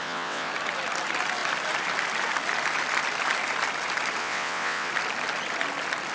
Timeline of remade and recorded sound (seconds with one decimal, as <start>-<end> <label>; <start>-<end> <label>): 0.0-0.5 remade; 0.5-4.2 recorded; 4.2-4.9 remade; 4.9-6.1 recorded